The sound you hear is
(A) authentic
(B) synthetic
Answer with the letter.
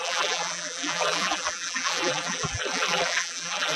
B